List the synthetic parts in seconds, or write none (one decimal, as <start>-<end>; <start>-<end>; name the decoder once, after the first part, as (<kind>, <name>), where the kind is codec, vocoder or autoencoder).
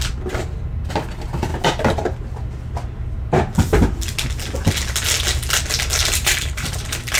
6.0-7.2 (vocoder, BigVGAN v2)